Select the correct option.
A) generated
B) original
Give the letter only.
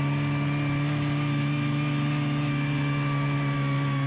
B